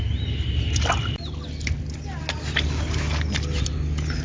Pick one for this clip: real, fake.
real